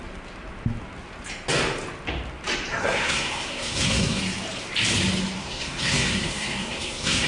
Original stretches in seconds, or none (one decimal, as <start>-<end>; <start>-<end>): 0.0-2.8; 4.2-5.4